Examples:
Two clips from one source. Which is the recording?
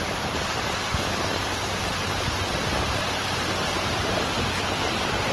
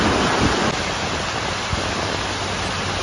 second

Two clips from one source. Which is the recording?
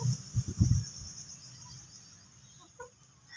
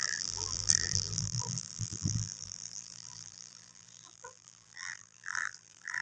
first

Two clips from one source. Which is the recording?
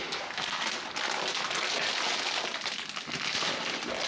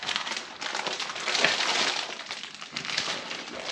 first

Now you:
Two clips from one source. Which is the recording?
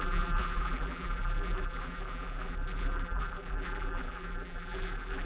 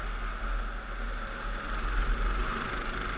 second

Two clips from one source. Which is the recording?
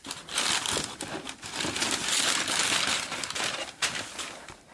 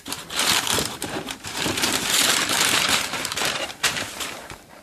first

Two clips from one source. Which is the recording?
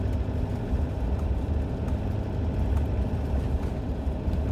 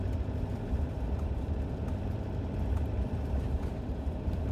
first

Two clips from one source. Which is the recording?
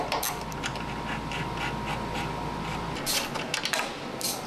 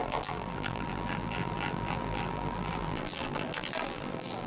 first